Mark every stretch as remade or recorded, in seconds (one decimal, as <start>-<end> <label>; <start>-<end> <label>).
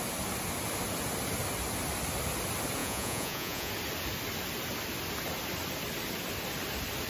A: 0.0-2.8 recorded; 2.8-3.7 remade; 3.7-7.1 recorded